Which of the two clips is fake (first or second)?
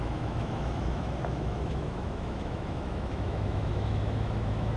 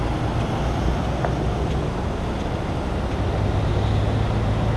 first